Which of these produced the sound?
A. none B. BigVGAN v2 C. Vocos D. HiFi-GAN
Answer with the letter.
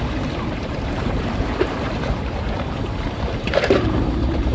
B